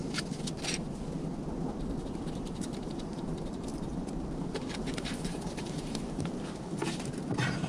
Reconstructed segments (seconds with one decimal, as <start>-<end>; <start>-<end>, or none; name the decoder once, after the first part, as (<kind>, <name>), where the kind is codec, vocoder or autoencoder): 2.9-7.7 (vocoder, BigVGAN v2)